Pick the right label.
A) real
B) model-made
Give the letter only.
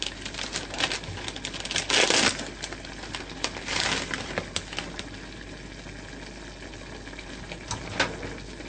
A